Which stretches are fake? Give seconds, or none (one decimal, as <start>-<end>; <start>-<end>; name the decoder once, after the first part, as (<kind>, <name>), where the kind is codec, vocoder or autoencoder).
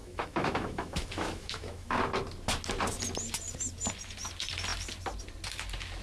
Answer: 0.0-2.0 (autoencoder, DAC-VAE)